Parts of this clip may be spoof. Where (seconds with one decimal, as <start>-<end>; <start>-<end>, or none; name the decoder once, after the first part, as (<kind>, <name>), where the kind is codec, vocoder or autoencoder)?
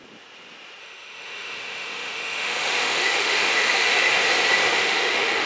0.8-4.1 (autoencoder, DAC-VAE); 4.7-5.5